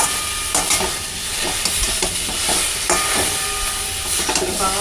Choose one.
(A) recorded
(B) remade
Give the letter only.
A